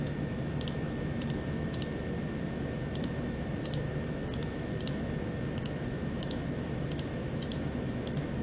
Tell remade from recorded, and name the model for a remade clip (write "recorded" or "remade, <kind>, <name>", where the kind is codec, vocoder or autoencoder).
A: remade, autoencoder, DAC-VAE